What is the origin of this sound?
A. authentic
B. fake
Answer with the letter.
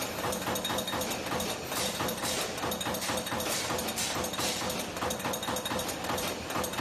A